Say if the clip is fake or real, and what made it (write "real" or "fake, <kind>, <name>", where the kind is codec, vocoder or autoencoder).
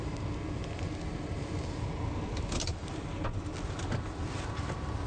real